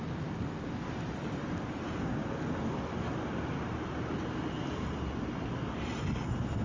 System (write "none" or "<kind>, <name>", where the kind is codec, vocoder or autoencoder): none